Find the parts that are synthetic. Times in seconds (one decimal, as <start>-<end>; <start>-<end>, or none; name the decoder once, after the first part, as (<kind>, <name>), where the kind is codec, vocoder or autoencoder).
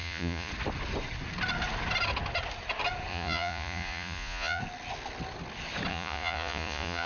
0.0-0.5 (vocoder, Vocos); 3.1-4.6; 5.9-7.1